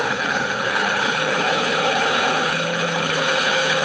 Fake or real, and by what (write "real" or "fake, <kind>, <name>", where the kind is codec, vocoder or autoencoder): fake, codec, HILCodec